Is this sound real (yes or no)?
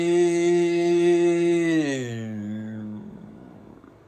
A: no